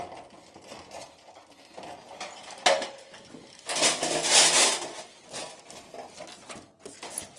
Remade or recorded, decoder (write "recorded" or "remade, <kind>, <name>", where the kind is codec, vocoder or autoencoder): recorded